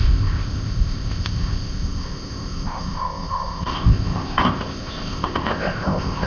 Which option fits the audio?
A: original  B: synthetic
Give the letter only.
B